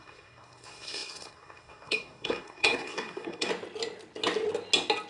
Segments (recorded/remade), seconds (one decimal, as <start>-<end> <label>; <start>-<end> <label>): 0.0-3.5 remade; 3.5-5.1 recorded